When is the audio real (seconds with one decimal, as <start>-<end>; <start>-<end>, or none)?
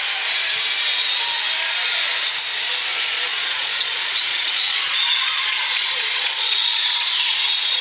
0.0-2.9